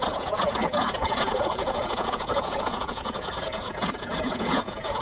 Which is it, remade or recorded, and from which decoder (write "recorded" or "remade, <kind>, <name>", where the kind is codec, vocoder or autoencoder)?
remade, vocoder, Vocos